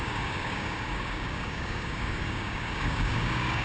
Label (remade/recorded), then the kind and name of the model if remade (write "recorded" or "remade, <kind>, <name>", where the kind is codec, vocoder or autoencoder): remade, codec, DAC